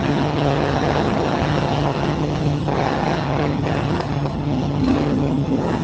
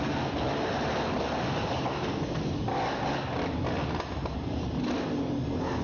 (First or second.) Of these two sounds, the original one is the second